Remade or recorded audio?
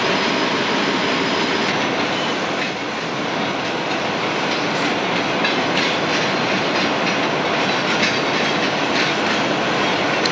recorded